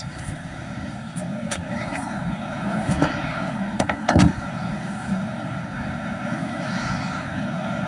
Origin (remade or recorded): remade